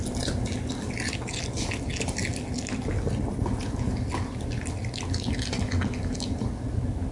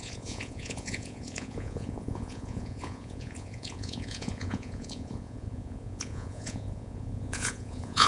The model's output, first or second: second